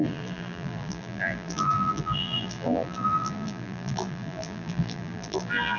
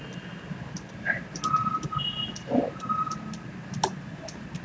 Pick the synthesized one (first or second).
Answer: first